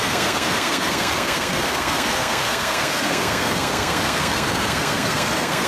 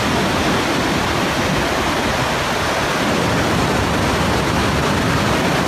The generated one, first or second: first